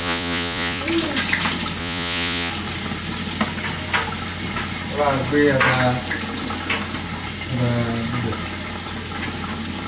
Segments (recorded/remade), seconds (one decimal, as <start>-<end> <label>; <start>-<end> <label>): 0.0-0.8 remade; 0.8-1.8 recorded; 1.8-2.5 remade; 2.5-9.9 recorded